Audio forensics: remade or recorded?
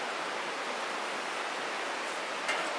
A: recorded